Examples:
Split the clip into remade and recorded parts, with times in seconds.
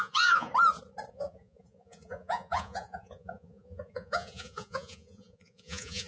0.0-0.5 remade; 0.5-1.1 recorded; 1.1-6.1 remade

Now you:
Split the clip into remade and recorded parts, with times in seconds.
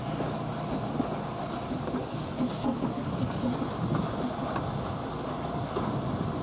0.0-0.5 remade; 0.5-2.0 recorded; 2.0-3.4 remade; 3.4-6.4 recorded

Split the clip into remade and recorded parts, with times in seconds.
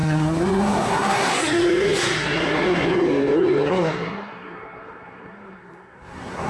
0.0-6.5 remade